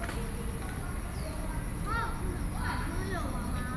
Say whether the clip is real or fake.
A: real